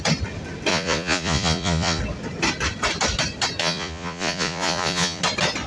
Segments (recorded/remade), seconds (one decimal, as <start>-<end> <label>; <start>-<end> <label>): 0.0-0.7 recorded; 0.7-2.0 remade; 2.0-3.6 recorded; 3.6-5.2 remade; 5.2-5.7 recorded